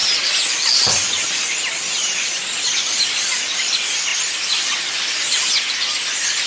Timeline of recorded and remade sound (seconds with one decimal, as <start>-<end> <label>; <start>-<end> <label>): 0.0-6.5 recorded